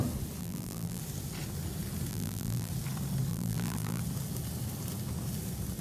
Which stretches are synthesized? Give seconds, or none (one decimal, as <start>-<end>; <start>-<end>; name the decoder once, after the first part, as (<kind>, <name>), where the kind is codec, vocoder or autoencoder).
0.4-1.0 (vocoder, BigVGAN v2); 2.1-2.7; 3.3-4.0